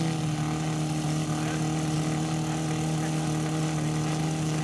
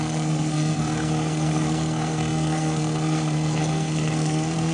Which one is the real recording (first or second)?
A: first